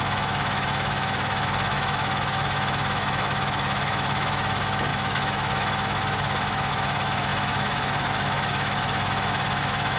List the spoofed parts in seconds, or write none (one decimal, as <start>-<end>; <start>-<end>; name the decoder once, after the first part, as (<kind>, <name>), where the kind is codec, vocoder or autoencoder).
0.0-10.0 (autoencoder, DAC-VAE)